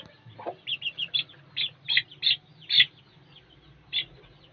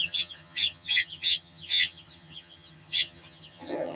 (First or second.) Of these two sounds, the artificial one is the second